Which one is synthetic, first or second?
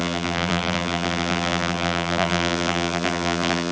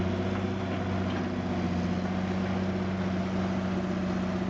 first